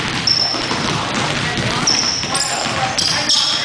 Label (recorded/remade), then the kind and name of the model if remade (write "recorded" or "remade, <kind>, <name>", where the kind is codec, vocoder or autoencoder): recorded